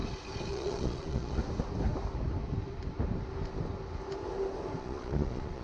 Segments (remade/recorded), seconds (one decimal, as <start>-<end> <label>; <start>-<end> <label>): 0.0-0.5 recorded; 0.5-1.4 remade; 1.4-4.8 recorded; 4.8-5.6 remade